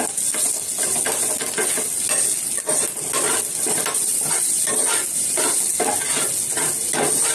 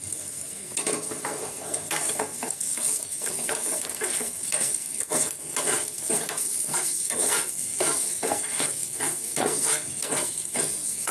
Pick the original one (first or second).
first